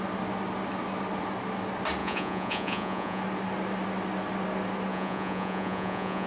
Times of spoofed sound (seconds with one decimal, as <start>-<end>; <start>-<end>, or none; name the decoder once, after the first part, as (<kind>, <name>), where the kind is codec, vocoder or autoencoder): 2.0-3.2 (vocoder, Vocos); 4.9-6.3